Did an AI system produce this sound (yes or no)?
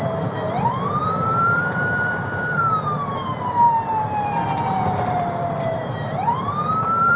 yes